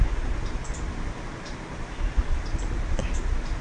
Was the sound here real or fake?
real